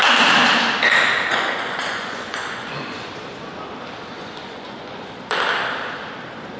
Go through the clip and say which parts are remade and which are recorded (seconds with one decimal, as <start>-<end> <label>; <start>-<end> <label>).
0.0-1.3 recorded; 1.3-3.1 remade; 3.1-4.2 recorded; 4.2-5.0 remade; 5.0-6.6 recorded